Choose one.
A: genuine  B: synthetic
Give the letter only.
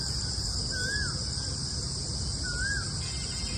A